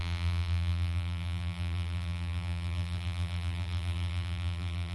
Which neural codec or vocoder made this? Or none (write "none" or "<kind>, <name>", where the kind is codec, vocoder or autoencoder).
vocoder, BigVGAN v2